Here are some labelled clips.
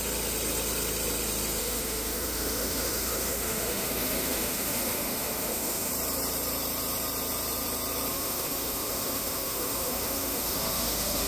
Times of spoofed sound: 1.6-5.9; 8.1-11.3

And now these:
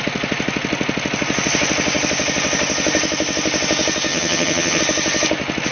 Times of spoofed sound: 4.1-4.8

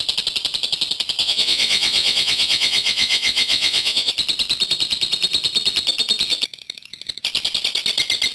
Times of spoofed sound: 1.2-4.1

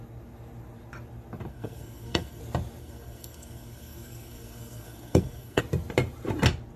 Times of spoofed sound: 1.5-2.4; 2.8-5.6

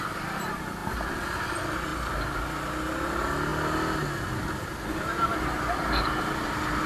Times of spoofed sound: 1.9-2.4

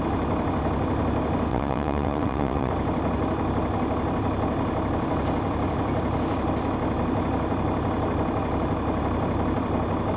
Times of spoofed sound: 1.5-2.7

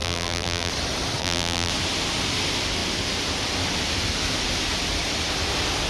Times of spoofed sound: 0.0-0.7; 1.2-1.7

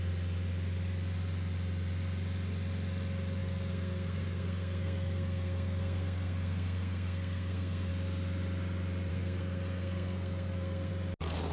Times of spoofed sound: 3.4-7.9; 9.1-10.9